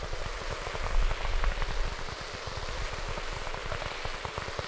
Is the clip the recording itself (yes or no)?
yes